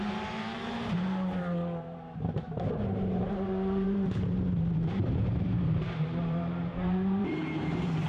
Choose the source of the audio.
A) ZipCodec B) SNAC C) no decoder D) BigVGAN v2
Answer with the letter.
D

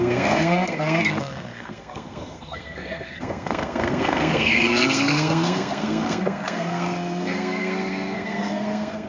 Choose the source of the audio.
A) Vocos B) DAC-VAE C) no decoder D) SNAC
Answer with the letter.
D